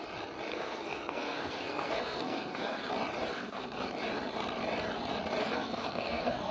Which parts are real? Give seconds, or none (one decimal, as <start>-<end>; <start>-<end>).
0.0-0.5; 2.9-3.3; 3.9-5.4